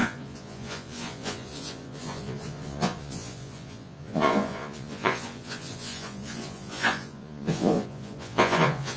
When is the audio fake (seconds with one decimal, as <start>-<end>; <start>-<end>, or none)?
0.0-9.0